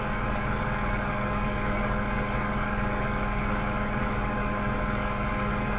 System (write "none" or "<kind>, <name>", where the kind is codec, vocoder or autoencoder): codec, DAC